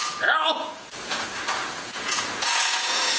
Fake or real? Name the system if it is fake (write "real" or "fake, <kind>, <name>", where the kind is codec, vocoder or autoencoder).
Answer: fake, vocoder, Vocos